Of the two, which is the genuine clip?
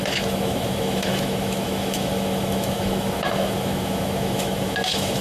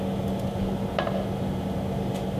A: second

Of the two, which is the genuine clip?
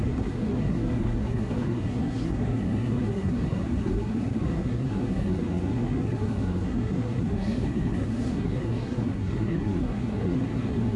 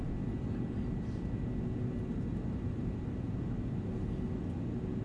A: second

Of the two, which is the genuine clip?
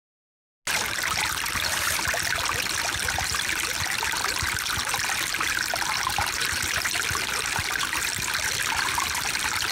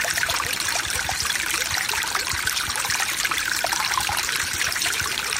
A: first